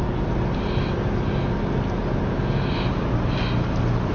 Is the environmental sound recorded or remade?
recorded